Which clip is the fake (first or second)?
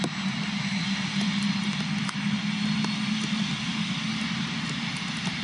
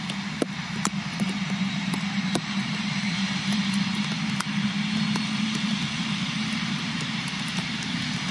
second